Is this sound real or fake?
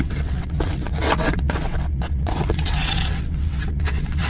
fake